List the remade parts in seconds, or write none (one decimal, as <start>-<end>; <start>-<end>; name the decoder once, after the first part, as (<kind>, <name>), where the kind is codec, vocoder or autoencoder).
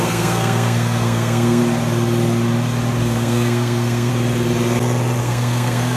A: 0.0-1.6 (codec, SNAC); 3.0-4.1; 5.2-6.0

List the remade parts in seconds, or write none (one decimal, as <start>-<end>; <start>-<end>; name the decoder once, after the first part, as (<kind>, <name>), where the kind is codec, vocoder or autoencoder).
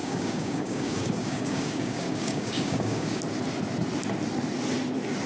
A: 0.0-3.2 (codec, DAC)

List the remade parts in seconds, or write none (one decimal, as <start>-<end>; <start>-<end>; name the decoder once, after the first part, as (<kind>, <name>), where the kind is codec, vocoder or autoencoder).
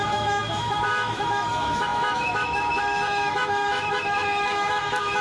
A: 0.0-5.2 (autoencoder, DAC-VAE)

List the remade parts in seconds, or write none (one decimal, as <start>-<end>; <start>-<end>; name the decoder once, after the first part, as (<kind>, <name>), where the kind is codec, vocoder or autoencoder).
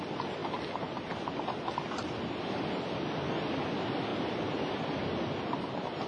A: none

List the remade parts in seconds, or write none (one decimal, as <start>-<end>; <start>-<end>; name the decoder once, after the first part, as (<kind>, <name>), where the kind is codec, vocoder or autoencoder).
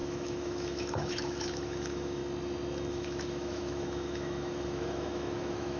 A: 0.0-2.2 (autoencoder, DAC-VAE); 2.9-5.8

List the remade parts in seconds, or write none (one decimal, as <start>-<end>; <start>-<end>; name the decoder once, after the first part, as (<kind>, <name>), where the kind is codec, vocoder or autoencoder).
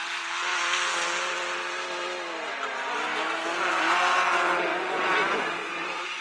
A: 4.7-6.2 (vocoder, Vocos)